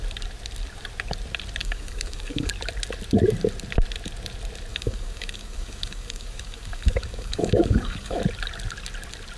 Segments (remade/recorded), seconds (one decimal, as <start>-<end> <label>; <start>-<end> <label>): 0.0-1.6 recorded; 1.6-2.5 remade; 2.5-4.7 recorded; 4.7-8.2 remade; 8.2-9.4 recorded

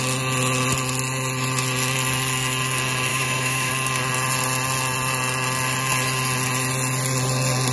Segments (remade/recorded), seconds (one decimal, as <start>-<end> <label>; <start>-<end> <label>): 0.0-3.1 recorded; 3.1-3.7 remade; 3.7-7.7 recorded

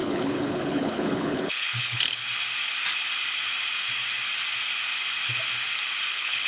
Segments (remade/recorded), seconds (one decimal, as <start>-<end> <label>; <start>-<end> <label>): 0.0-2.2 remade; 2.2-6.1 recorded; 6.1-6.5 remade

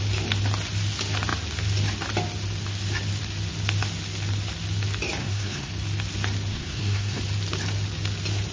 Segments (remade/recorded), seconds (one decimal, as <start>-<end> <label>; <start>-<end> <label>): 0.0-5.2 recorded; 5.2-5.7 remade; 5.7-6.5 recorded; 6.5-7.2 remade; 7.2-8.5 recorded

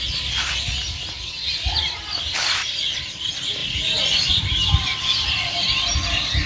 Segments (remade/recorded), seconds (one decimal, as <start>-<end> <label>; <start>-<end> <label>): 0.0-6.5 recorded